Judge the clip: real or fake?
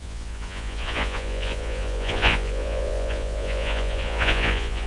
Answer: fake